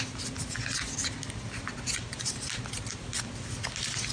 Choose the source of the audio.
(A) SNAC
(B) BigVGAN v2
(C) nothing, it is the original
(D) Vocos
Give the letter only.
C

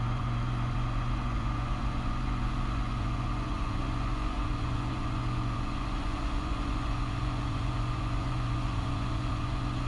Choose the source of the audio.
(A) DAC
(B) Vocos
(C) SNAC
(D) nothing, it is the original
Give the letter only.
B